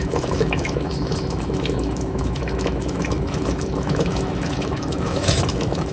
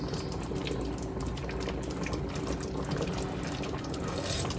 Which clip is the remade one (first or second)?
first